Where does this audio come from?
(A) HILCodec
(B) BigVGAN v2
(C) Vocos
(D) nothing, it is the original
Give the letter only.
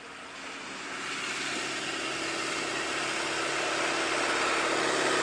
D